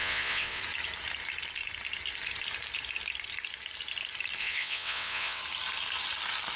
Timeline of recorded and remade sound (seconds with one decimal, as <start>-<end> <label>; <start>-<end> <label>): 0.0-0.6 remade; 0.6-4.4 recorded; 4.4-5.4 remade; 5.4-6.6 recorded